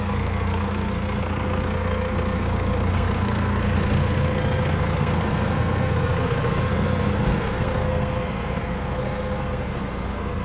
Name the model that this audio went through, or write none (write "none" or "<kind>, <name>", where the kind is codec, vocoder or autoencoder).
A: codec, SNAC